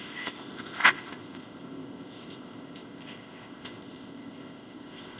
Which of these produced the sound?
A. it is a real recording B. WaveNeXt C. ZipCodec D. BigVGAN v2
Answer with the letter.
C